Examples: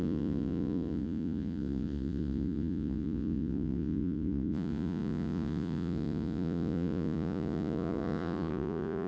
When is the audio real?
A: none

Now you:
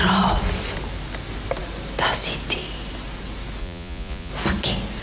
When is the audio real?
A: 0.0-3.6; 4.3-5.0

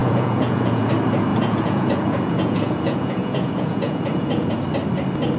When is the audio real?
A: 0.9-1.3; 4.5-5.4

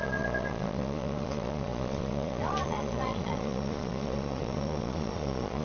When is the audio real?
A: none

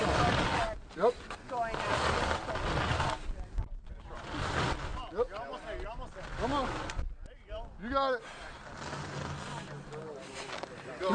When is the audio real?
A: 0.0-11.1

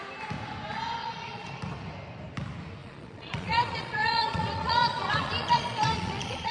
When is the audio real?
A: 0.0-1.0; 1.5-2.8

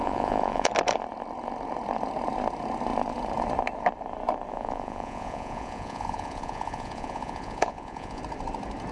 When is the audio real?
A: 0.7-4.5; 8.2-8.9